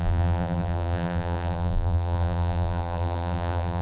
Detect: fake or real fake